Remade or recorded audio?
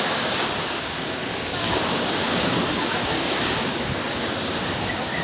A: remade